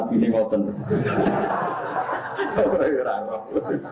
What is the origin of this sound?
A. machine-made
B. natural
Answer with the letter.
B